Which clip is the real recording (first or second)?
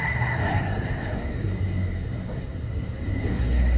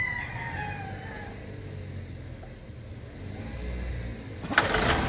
second